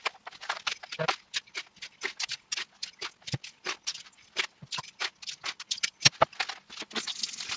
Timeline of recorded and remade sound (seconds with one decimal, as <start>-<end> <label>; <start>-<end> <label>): 0.0-7.6 recorded